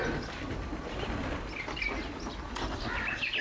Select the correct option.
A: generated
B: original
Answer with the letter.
B